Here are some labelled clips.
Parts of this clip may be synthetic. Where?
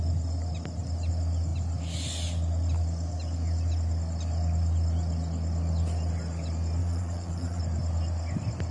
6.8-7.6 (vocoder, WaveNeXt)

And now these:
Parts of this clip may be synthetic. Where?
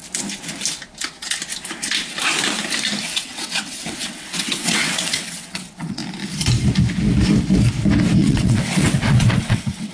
3.0-6.0 (vocoder, WaveNeXt); 8.2-9.9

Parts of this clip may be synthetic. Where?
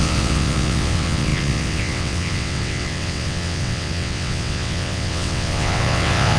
0.0-6.4 (vocoder, WaveNeXt)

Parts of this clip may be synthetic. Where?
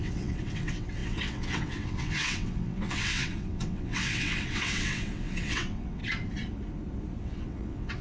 0.0-6.0 (vocoder, WaveNeXt); 7.2-8.0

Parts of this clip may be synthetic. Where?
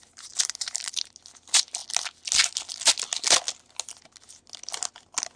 none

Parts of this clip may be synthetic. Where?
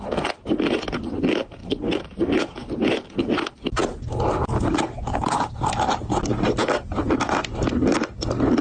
none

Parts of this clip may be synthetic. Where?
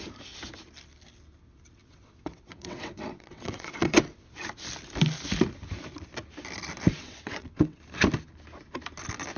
1.8-4.3 (vocoder, WaveNeXt); 6.9-7.8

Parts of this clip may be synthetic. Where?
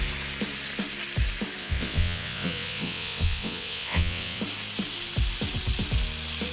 1.6-4.4 (vocoder, WaveNeXt)